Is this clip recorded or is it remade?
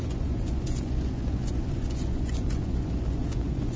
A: remade